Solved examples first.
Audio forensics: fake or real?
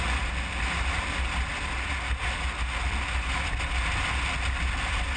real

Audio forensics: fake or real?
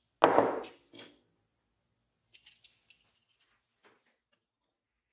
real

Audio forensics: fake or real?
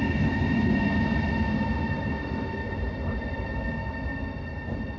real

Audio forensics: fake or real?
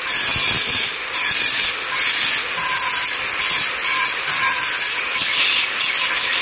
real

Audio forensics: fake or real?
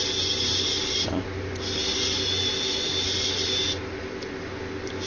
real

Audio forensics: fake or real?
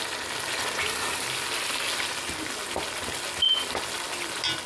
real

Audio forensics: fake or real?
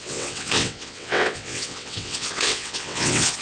fake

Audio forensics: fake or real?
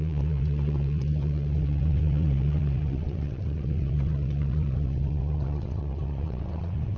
fake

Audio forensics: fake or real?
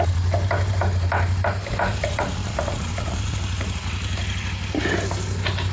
real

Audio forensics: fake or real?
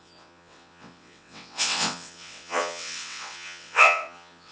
fake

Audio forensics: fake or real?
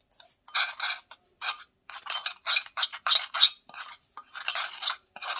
real